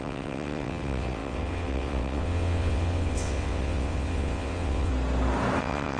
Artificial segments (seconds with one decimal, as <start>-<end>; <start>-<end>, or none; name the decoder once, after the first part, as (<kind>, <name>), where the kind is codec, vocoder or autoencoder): 0.0-4.9 (vocoder, WaveNeXt); 5.6-6.0